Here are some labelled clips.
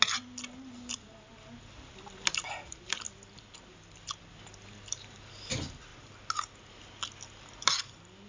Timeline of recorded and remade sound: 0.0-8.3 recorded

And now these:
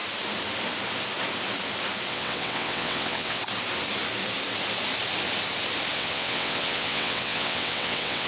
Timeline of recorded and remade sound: 0.0-2.1 recorded; 2.1-3.4 remade; 3.4-5.9 recorded; 5.9-8.3 remade

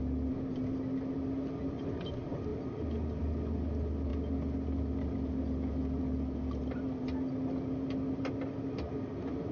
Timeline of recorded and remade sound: 0.0-9.5 recorded